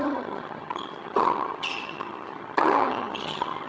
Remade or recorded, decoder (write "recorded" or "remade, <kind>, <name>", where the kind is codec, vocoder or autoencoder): remade, vocoder, HiFi-GAN